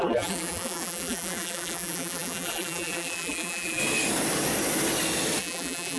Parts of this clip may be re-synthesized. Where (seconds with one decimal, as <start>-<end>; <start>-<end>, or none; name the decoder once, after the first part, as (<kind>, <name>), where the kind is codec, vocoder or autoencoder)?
0.0-3.8 (vocoder, BigVGAN v2); 5.4-6.0